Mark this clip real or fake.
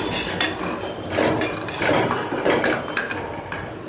real